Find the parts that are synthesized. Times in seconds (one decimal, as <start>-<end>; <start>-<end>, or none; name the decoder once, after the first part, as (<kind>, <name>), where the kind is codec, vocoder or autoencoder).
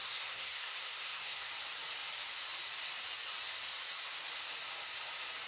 0.0-1.5 (codec, SNAC)